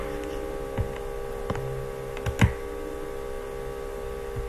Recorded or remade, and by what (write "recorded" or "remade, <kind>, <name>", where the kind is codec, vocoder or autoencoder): recorded